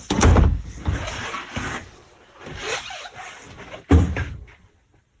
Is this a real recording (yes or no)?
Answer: yes